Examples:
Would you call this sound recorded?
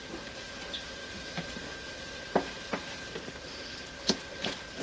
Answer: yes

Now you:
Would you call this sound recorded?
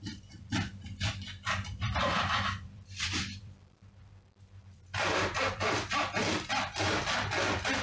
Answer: no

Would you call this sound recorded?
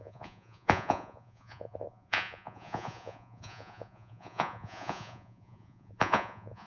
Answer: no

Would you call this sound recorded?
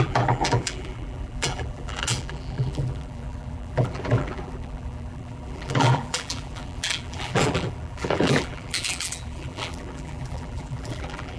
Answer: no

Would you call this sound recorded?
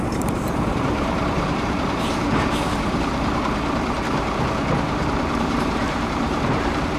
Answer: no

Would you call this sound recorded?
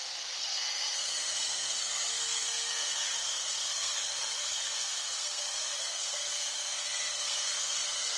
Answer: no